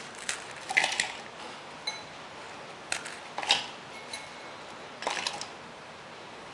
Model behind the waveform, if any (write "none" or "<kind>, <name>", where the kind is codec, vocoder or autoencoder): none